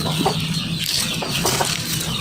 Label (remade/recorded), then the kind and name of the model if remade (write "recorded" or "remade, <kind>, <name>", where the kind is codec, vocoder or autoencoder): recorded